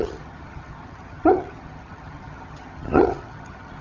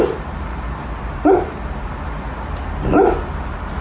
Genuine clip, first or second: second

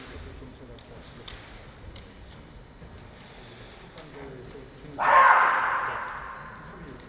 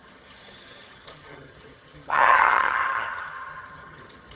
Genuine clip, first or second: first